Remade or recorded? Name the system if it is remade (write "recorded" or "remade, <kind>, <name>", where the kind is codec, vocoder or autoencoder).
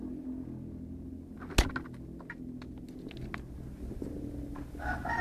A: recorded